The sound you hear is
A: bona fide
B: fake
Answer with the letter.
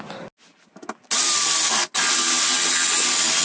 A